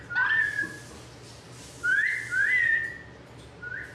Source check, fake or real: real